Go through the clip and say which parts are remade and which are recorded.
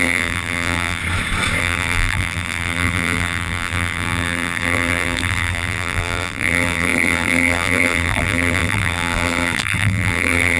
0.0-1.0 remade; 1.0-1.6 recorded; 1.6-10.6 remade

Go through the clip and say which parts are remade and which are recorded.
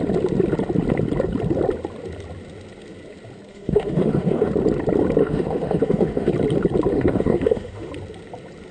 0.0-3.5 recorded; 3.5-4.5 remade; 4.5-5.2 recorded; 5.2-6.3 remade; 6.3-6.9 recorded; 6.9-7.9 remade; 7.9-8.7 recorded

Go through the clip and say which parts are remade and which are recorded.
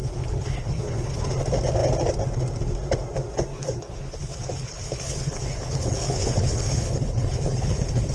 0.0-1.2 remade; 1.2-3.5 recorded; 3.5-8.1 remade